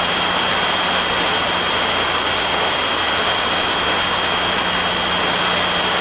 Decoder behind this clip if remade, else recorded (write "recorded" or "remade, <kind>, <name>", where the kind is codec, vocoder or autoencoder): recorded